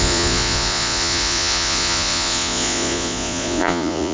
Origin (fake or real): fake